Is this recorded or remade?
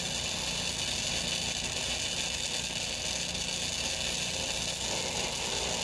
recorded